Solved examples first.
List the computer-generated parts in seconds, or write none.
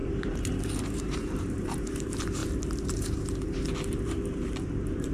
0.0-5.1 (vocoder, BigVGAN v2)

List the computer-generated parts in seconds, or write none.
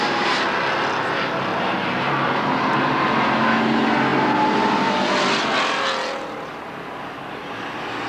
1.5-2.3 (vocoder, BigVGAN v2)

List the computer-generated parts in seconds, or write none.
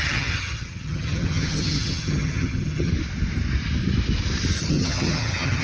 0.0-2.9 (vocoder, HiFi-GAN); 4.7-5.6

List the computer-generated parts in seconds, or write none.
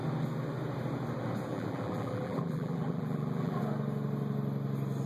1.5-3.6 (vocoder, BigVGAN v2)